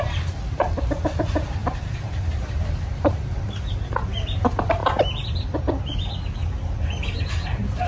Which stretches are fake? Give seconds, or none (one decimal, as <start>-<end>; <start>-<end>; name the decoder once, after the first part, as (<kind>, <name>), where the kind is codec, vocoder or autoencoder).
1.6-3.6 (vocoder, BigVGAN v2)